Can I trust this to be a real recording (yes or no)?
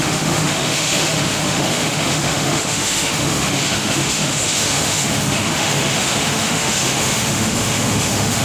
no